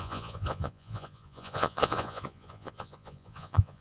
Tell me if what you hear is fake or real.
fake